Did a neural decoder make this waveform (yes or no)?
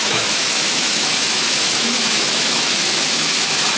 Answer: yes